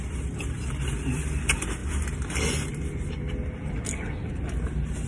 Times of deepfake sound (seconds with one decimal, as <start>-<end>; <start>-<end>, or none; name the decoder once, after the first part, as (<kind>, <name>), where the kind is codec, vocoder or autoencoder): none